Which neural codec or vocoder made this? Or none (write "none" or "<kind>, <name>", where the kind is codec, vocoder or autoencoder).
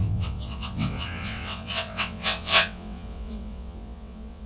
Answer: vocoder, WaveNeXt